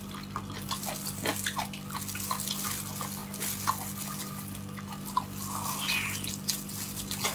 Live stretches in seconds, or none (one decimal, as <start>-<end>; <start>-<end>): 0.0-7.3